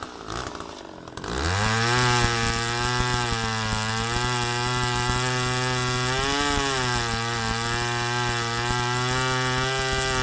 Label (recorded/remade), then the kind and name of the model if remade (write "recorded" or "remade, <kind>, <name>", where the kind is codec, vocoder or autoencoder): recorded